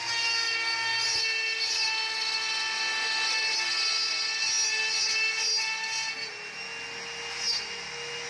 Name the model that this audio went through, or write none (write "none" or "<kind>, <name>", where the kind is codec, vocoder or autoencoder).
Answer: none